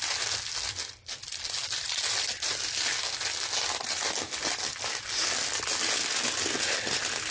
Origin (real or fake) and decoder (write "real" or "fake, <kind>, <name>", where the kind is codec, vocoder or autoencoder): real